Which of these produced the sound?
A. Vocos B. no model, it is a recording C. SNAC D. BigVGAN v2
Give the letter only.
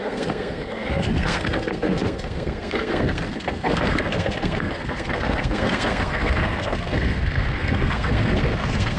C